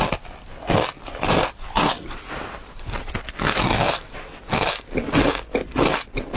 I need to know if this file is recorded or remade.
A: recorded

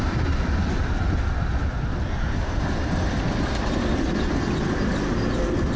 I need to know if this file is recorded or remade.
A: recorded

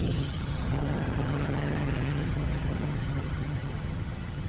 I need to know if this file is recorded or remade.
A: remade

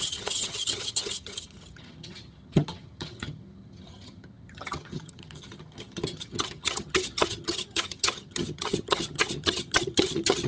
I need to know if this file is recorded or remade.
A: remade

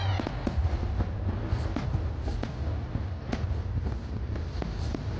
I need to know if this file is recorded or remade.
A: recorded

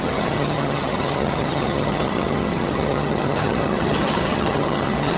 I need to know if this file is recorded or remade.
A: remade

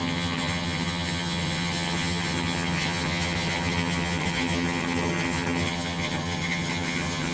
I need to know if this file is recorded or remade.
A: remade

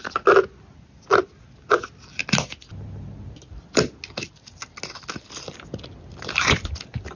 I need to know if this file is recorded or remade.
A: recorded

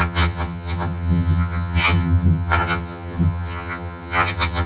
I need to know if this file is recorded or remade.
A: remade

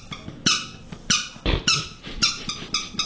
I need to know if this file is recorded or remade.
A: recorded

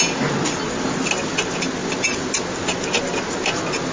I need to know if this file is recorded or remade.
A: recorded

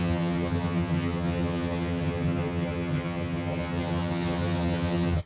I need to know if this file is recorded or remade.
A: remade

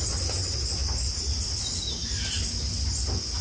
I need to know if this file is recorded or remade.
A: recorded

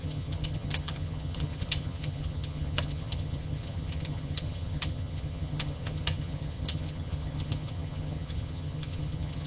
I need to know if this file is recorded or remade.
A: remade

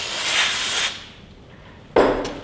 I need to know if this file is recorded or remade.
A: recorded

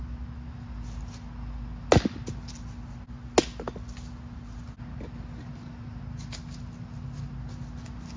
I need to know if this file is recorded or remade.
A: recorded